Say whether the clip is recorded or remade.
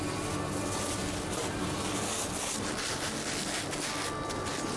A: recorded